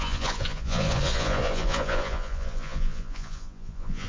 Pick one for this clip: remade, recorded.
remade